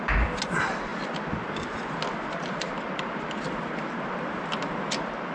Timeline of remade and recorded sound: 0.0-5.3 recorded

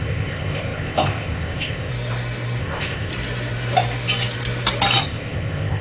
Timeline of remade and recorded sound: 0.0-1.9 remade; 1.9-2.6 recorded; 2.6-3.1 remade; 3.1-5.0 recorded; 5.0-5.8 remade

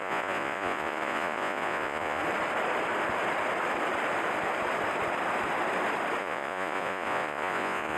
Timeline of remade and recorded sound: 0.0-2.2 remade; 2.2-6.2 recorded; 6.2-8.0 remade

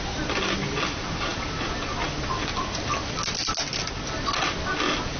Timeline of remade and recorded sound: 0.0-5.2 recorded